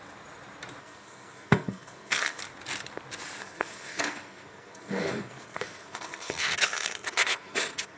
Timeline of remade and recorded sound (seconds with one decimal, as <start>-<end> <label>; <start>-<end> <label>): 0.0-0.8 recorded; 0.8-2.4 remade; 2.4-3.4 recorded; 3.4-8.0 remade